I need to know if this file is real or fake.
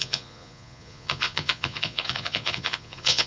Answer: fake